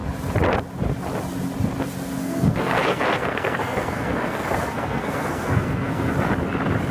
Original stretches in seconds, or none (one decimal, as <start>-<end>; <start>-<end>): 0.0-2.2; 6.3-6.9